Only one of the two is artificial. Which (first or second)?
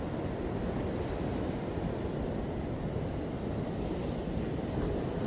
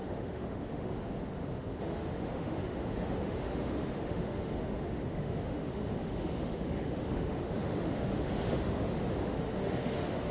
second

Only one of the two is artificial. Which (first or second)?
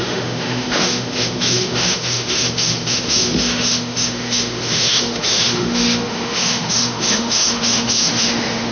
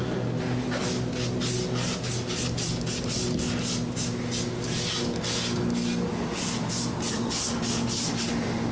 first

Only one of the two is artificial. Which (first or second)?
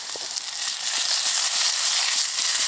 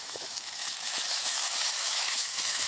second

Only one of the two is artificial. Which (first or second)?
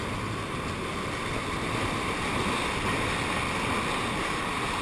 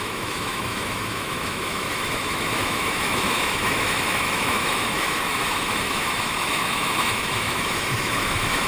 second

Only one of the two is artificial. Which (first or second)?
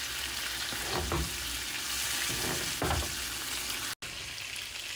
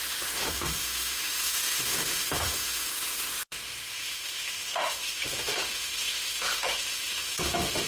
second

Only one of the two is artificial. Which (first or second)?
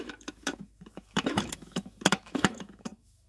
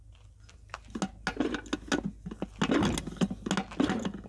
first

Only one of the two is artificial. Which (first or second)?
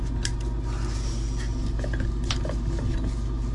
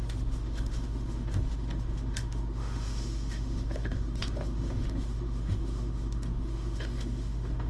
second